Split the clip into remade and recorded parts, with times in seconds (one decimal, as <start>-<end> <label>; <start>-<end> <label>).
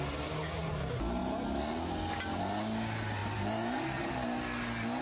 0.0-3.2 recorded; 3.2-4.1 remade; 4.1-5.0 recorded